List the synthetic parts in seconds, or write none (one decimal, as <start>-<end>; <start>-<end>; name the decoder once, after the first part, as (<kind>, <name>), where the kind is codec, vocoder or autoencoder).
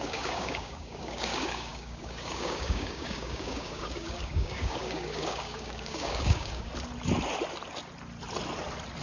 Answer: 0.0-6.7 (codec, DAC)